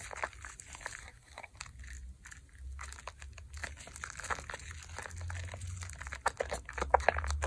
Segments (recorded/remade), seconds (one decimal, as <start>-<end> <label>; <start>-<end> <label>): 0.0-1.0 recorded; 1.0-1.5 remade; 1.5-7.5 recorded